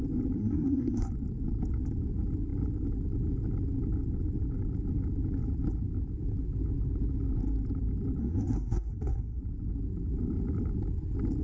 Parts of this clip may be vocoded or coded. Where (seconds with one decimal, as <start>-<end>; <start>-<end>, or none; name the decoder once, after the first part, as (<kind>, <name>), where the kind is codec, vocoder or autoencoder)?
0.4-1.1 (codec, SNAC); 8.2-9.4